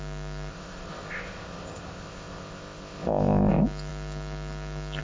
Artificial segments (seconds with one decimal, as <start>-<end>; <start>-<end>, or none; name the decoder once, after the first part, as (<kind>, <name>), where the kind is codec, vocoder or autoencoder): 0.5-3.5 (codec, ZipCodec)